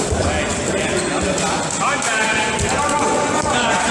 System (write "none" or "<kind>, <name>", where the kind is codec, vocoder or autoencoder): none